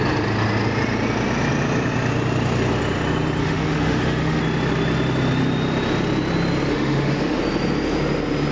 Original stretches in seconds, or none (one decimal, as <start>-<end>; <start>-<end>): 0.0-3.4; 4.4-6.7; 7.4-8.5